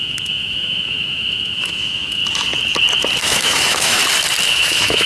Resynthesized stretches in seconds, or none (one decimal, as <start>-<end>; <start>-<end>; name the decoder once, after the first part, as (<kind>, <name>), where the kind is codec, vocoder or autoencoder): 0.0-2.2 (autoencoder, DAC-VAE); 3.2-4.0; 4.5-5.1